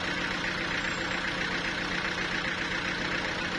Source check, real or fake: real